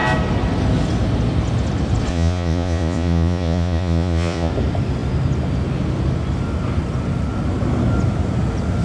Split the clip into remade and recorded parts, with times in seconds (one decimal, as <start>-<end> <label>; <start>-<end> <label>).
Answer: 0.0-2.1 recorded; 2.1-4.5 remade; 4.5-8.8 recorded